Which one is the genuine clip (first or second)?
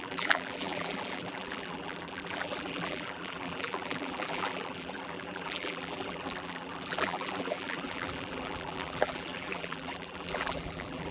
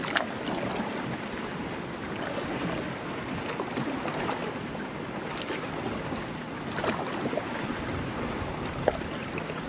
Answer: second